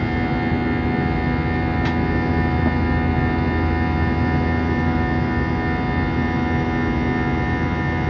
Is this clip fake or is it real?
real